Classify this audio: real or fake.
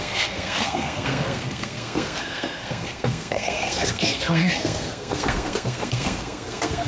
fake